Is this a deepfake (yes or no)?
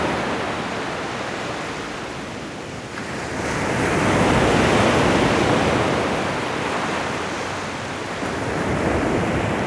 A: no